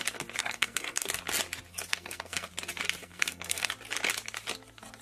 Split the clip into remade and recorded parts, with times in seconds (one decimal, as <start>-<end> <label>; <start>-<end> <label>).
0.0-0.4 recorded; 0.4-1.1 remade; 1.1-1.9 recorded; 1.9-2.5 remade; 2.5-3.0 recorded; 3.0-3.7 remade; 3.7-5.0 recorded